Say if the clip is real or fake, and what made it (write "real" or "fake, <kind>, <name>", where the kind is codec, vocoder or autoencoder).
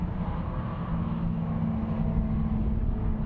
real